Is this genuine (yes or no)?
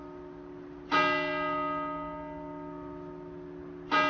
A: yes